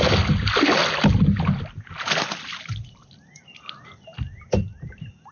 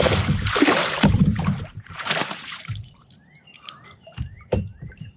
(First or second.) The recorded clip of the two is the first